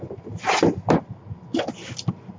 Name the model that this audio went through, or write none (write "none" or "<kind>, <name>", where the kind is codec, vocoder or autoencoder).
none